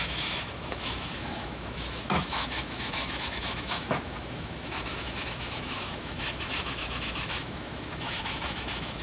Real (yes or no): no